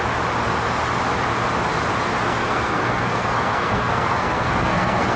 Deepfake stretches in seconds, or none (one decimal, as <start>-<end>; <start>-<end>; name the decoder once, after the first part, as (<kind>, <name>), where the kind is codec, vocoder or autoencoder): 2.2-5.2 (codec, SNAC)